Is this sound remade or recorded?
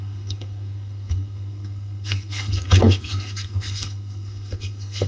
remade